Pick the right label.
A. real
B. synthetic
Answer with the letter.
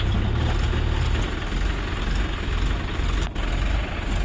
A